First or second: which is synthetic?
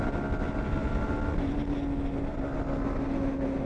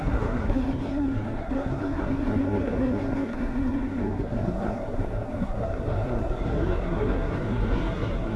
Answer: second